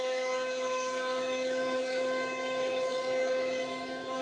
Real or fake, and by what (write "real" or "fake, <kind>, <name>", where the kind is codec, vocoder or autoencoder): fake, autoencoder, DAC-VAE